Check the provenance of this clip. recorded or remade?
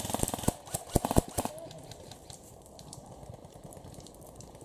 remade